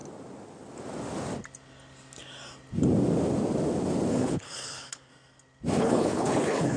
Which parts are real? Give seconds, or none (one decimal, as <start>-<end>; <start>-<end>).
0.0-4.1; 5.1-5.8